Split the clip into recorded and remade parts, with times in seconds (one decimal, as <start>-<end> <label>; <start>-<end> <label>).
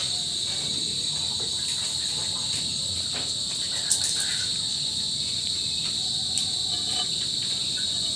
0.0-4.7 recorded; 4.7-5.5 remade; 5.5-6.9 recorded; 6.9-8.2 remade